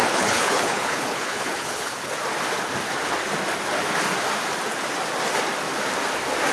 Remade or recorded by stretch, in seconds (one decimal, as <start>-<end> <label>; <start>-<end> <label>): 0.0-2.1 remade; 2.1-6.5 recorded